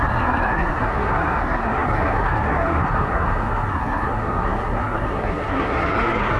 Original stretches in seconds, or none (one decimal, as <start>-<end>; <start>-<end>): none